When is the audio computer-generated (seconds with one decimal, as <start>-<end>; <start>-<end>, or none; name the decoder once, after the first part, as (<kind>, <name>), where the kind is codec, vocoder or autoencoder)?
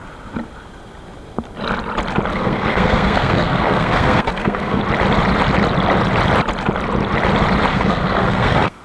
2.3-4.8 (codec, SNAC); 7.7-8.8